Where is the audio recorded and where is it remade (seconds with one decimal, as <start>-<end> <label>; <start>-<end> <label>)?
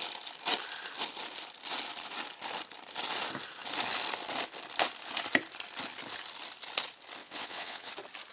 0.0-7.2 recorded; 7.2-7.9 remade; 7.9-8.3 recorded